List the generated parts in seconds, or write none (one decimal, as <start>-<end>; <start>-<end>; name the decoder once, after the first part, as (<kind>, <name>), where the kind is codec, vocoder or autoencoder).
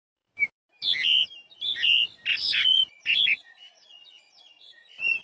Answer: 2.3-5.2 (vocoder, Vocos)